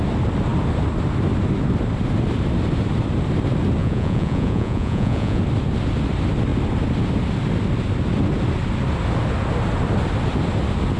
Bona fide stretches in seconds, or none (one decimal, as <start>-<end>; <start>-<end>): 0.0-3.8; 5.4-11.0